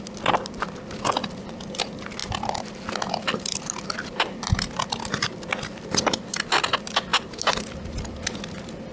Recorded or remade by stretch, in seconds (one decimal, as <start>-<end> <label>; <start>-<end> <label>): 0.0-8.9 recorded

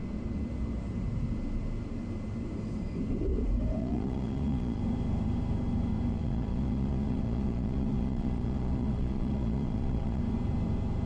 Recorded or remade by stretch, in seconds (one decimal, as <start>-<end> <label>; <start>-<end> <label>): 0.0-3.8 recorded; 3.8-4.8 remade; 4.8-6.1 recorded; 6.1-10.2 remade; 10.2-11.1 recorded

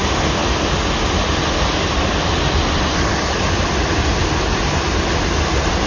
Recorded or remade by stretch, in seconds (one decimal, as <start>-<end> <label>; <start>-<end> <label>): 0.0-5.9 recorded

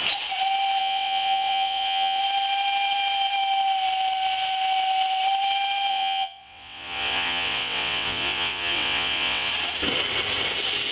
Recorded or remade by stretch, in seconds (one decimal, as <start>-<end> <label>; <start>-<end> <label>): 0.0-0.8 recorded; 0.8-2.2 remade; 2.2-5.9 recorded; 5.9-9.5 remade; 9.5-10.9 recorded